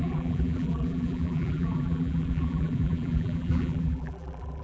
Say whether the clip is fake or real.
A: fake